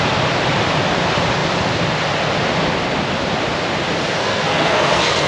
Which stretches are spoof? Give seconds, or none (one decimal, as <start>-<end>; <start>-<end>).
4.2-5.3